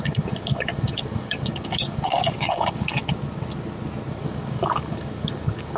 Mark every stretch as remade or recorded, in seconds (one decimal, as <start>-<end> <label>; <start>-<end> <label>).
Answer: 0.0-3.0 remade; 3.0-4.1 recorded; 4.1-5.8 remade